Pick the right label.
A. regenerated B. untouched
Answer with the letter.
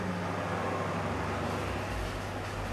B